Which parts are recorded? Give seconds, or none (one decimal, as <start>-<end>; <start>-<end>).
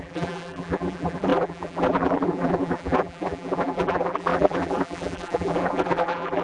none